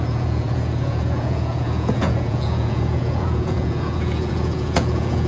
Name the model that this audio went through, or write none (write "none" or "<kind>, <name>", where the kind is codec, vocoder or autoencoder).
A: vocoder, Vocos